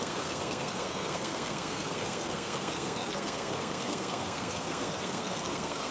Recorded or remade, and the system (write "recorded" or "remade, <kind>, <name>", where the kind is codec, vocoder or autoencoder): remade, codec, SNAC